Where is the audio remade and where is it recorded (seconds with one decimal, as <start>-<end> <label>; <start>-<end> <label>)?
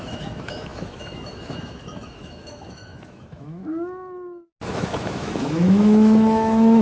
0.0-3.6 remade; 3.6-4.7 recorded; 4.7-6.8 remade